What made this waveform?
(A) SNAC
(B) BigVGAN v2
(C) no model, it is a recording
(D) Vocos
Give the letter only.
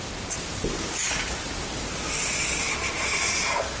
B